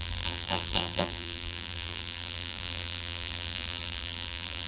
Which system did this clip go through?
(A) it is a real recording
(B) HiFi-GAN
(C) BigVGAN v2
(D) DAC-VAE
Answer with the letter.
C